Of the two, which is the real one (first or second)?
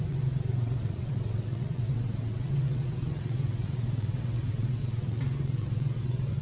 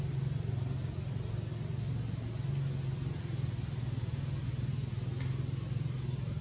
second